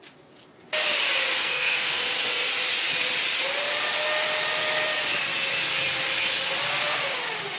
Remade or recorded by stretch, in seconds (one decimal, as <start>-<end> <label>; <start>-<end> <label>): 0.0-1.4 recorded; 1.4-2.0 remade; 2.0-7.6 recorded